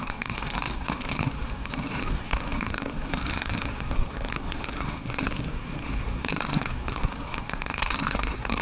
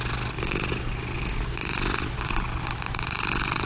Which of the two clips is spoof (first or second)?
first